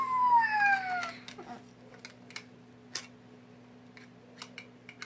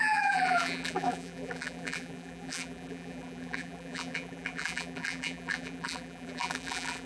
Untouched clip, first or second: first